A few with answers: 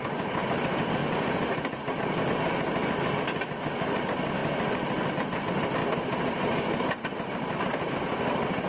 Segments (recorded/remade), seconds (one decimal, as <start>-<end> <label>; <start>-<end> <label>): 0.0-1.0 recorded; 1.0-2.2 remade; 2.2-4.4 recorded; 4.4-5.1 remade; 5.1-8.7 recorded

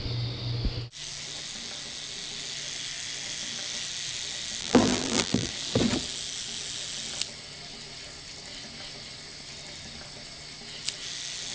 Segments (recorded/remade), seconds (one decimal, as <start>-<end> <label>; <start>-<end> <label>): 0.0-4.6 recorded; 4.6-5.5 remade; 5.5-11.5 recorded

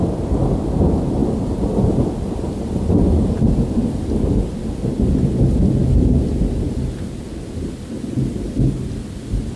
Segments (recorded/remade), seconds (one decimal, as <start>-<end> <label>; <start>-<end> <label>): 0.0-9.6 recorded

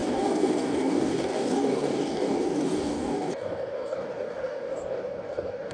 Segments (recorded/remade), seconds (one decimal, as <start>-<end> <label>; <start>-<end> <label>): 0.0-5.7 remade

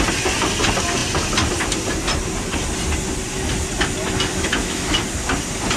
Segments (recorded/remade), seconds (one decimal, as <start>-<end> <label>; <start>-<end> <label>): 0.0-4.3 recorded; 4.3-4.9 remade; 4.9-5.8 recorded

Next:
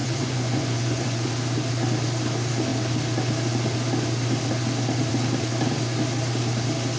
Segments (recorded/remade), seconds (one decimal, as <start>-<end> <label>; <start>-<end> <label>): 0.0-1.3 remade; 1.3-7.0 recorded

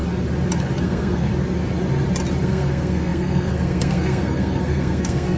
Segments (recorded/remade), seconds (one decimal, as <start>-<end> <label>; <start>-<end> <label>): 0.0-0.8 recorded; 0.8-1.3 remade; 1.3-2.4 recorded; 2.4-5.4 remade